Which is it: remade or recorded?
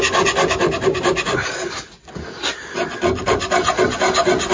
recorded